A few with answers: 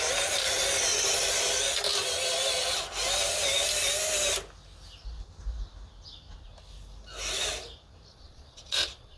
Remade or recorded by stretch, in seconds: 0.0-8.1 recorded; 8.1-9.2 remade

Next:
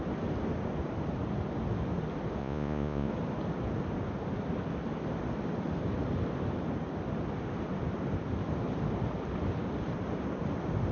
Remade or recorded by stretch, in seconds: 0.0-2.4 recorded; 2.4-3.1 remade; 3.1-10.9 recorded